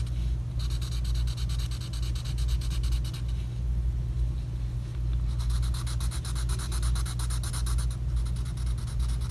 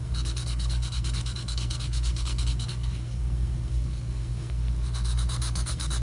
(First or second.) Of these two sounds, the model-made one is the second